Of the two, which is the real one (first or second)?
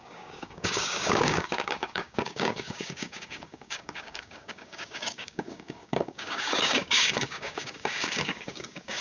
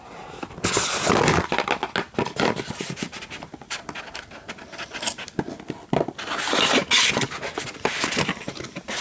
second